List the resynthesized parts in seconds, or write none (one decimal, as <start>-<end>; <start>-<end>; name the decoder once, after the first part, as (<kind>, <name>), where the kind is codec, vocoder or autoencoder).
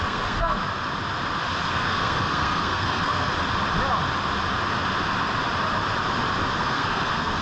0.0-0.6 (codec, SNAC); 1.7-3.3; 6.6-7.4